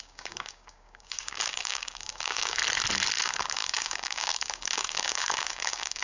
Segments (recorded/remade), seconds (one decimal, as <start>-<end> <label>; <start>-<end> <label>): 0.0-2.6 remade; 2.6-3.2 recorded; 3.2-6.0 remade